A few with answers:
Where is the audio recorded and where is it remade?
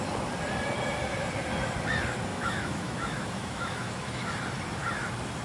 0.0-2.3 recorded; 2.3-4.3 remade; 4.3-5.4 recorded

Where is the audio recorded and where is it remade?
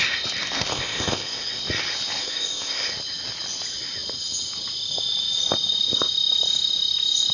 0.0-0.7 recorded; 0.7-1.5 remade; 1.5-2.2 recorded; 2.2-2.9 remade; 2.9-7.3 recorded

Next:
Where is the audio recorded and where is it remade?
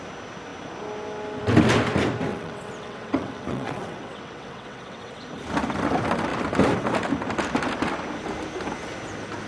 0.0-2.3 recorded; 2.3-5.2 remade; 5.2-9.5 recorded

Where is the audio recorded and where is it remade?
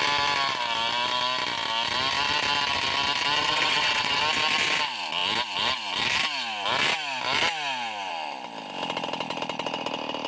0.0-3.4 recorded; 3.4-4.2 remade; 4.2-10.3 recorded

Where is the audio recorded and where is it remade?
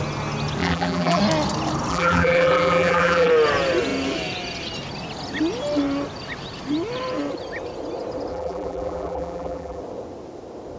0.0-0.6 recorded; 0.6-1.2 remade; 1.2-1.9 recorded; 1.9-3.3 remade; 3.3-8.3 recorded; 8.3-9.8 remade; 9.8-10.8 recorded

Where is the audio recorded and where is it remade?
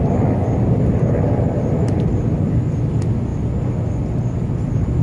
0.0-5.0 recorded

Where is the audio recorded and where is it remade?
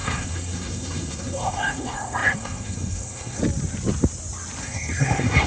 0.0-3.4 remade; 3.4-4.6 recorded; 4.6-5.5 remade